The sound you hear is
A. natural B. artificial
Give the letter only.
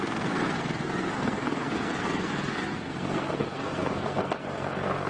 B